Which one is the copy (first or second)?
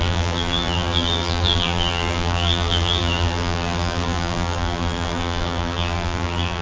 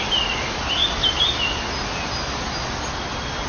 first